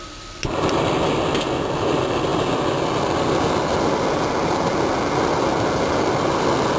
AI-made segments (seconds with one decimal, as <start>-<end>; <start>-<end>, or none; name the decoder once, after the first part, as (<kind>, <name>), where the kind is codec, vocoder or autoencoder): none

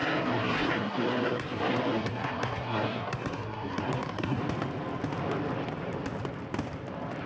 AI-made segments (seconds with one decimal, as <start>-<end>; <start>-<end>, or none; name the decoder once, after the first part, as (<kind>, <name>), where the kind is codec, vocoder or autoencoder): 0.0-4.4 (codec, SNAC)

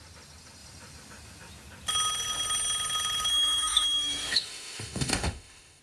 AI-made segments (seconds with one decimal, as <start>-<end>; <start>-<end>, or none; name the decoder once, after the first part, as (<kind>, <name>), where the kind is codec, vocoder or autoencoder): 3.3-5.8 (autoencoder, DAC-VAE)

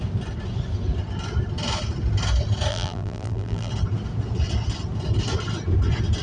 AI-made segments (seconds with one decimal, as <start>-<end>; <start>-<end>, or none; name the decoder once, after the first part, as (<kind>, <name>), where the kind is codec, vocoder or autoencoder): 2.7-3.7 (vocoder, BigVGAN v2)

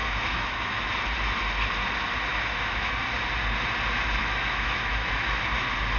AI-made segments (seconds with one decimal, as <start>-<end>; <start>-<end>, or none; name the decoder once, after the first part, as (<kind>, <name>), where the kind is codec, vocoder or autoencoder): 0.0-0.9 (autoencoder, DAC-VAE); 2.3-2.9; 4.2-5.4

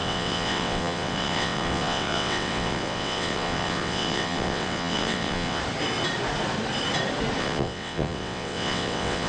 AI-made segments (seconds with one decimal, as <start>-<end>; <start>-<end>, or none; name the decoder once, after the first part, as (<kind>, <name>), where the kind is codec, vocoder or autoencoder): 0.0-5.6 (vocoder, WaveNeXt); 7.4-9.3

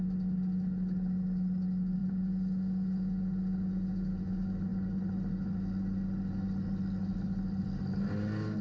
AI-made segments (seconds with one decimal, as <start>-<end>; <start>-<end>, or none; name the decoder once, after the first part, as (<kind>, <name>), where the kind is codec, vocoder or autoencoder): 2.0-4.3 (vocoder, Vocos)

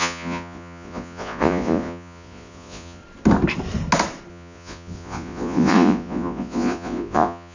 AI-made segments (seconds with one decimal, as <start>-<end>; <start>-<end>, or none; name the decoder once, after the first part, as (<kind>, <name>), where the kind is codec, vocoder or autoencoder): 0.0-3.0 (vocoder, Vocos); 4.3-7.5